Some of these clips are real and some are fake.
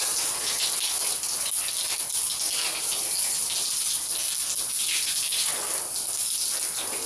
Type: real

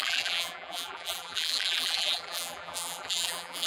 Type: fake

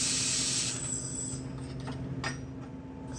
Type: real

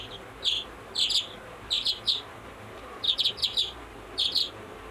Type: fake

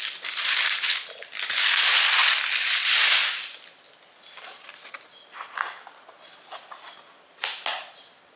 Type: real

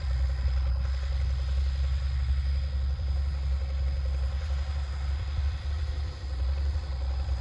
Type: fake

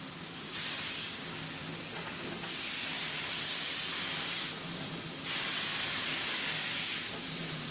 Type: real